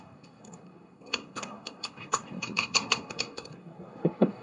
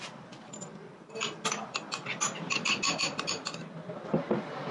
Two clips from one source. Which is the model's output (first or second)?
first